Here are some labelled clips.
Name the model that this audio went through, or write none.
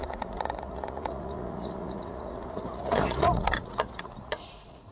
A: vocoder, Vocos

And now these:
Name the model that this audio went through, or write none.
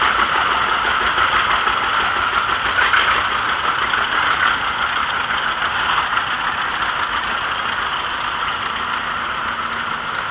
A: none